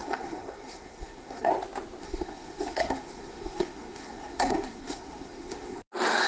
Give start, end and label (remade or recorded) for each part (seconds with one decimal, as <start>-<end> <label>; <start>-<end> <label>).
0.0-1.5 remade; 1.5-2.0 recorded; 2.0-5.8 remade; 5.8-6.3 recorded